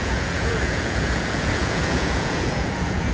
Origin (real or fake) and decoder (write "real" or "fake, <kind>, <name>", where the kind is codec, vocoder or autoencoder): fake, vocoder, Vocos